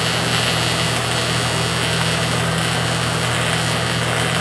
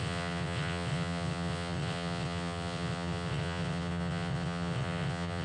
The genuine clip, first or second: first